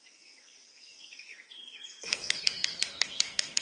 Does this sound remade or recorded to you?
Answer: remade